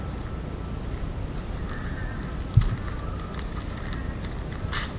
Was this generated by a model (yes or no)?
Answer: no